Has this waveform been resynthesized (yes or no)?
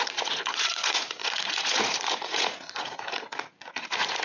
yes